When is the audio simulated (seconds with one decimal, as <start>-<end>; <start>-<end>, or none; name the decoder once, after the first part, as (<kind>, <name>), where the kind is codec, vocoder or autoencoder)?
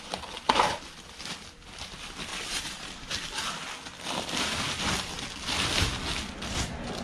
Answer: 0.0-2.3 (vocoder, BigVGAN v2); 6.5-7.0